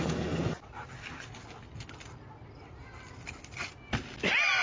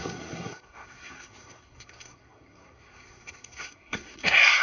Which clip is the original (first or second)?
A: first